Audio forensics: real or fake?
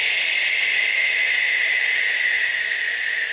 real